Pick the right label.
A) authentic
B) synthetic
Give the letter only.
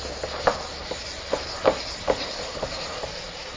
B